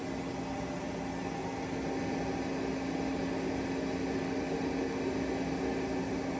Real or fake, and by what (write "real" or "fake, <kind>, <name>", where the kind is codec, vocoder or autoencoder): real